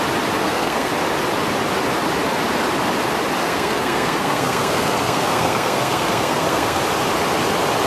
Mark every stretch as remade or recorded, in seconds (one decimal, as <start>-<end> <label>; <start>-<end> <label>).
0.0-0.4 recorded; 0.4-0.9 remade; 0.9-3.4 recorded; 3.4-6.8 remade; 6.8-7.9 recorded